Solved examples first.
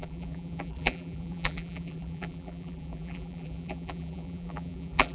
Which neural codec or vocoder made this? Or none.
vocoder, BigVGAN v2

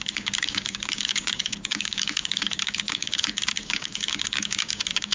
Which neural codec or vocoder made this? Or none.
codec, DAC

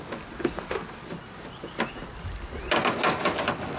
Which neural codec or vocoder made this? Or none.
none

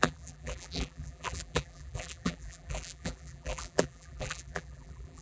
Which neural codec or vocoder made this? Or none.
vocoder, BigVGAN v2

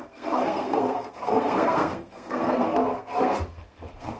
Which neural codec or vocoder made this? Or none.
codec, SNAC